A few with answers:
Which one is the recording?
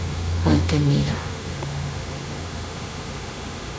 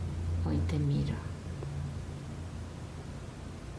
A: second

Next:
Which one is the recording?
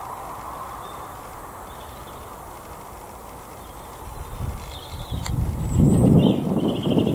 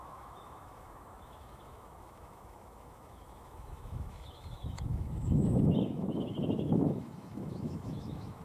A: first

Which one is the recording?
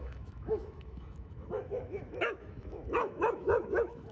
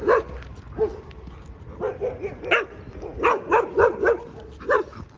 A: second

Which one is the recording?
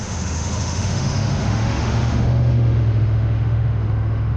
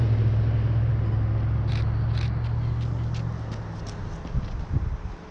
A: second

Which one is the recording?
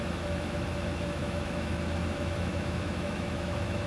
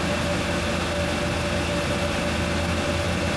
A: second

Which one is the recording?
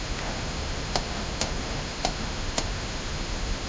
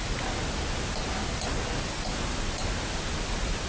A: second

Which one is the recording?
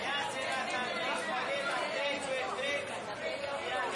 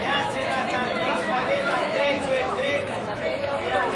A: first